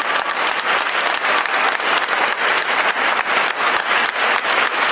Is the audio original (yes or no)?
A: yes